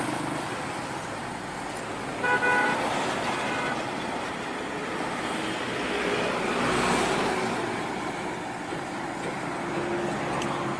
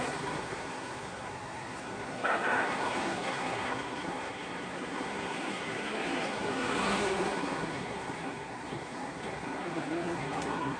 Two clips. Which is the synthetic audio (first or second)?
second